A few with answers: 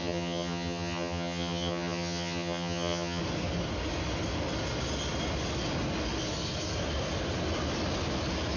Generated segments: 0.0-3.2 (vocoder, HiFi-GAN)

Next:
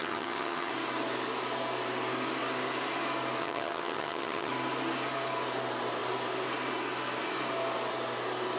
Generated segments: 0.0-0.7 (vocoder, HiFi-GAN); 3.4-4.5

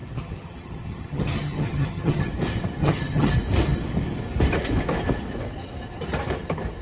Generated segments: 0.0-2.3 (vocoder, HiFi-GAN); 2.8-3.3

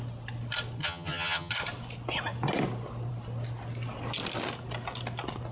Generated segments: 0.8-1.5 (vocoder, HiFi-GAN)